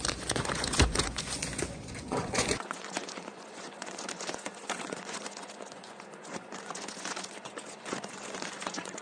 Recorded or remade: remade